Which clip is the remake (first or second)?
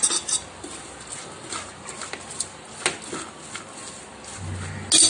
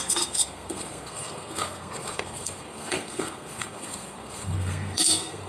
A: second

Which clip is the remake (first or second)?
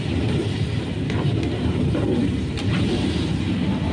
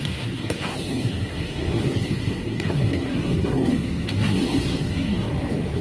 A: second